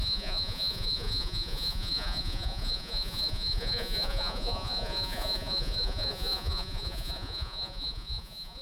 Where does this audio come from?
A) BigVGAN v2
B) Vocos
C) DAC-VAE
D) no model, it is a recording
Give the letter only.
B